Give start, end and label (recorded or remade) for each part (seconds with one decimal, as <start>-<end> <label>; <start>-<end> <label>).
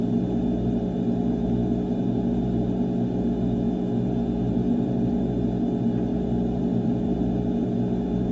0.0-4.5 recorded; 4.5-5.2 remade; 5.2-6.1 recorded; 6.1-7.2 remade; 7.2-8.3 recorded